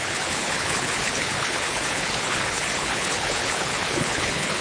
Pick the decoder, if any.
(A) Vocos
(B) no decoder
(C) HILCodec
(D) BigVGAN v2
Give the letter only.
C